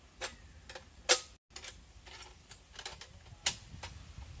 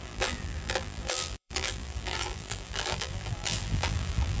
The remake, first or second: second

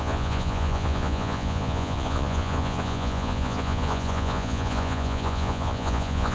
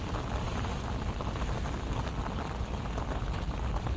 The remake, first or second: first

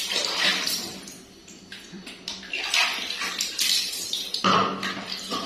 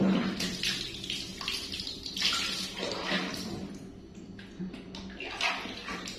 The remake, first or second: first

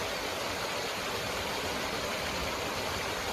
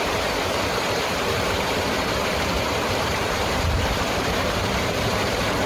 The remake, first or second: second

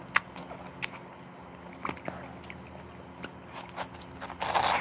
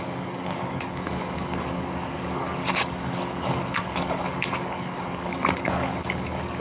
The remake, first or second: second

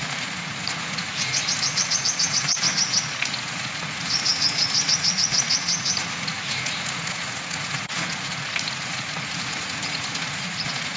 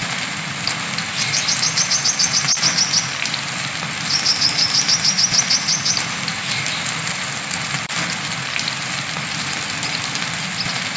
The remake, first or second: first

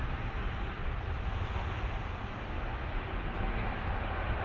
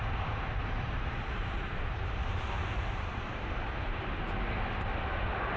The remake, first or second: second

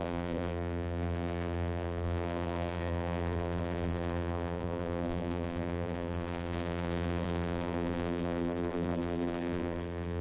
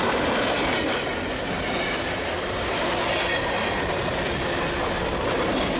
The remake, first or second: first